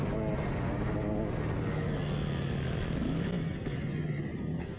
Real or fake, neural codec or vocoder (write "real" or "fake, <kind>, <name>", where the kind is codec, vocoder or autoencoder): real